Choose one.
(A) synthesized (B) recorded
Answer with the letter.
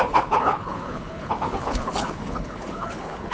A